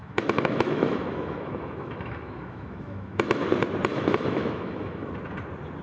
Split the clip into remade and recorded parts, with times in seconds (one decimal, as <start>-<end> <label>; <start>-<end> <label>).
0.0-3.5 remade; 3.5-3.9 recorded; 3.9-5.1 remade; 5.1-5.8 recorded